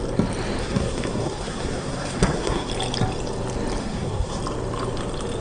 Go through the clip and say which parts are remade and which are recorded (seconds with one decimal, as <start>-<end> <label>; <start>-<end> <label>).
0.0-0.6 recorded; 0.6-2.7 remade; 2.7-3.8 recorded; 3.8-4.4 remade; 4.4-5.4 recorded